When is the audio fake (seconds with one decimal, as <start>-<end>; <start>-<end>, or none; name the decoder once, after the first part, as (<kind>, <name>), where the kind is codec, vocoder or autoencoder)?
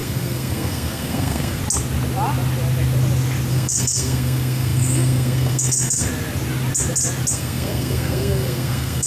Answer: 0.0-1.6 (codec, SNAC); 3.5-6.1; 7.3-9.1